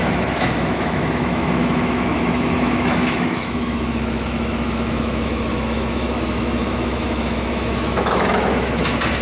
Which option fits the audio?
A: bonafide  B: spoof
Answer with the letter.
B